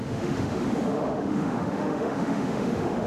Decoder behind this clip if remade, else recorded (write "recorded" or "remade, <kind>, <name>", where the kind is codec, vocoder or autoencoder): remade, autoencoder, DAC-VAE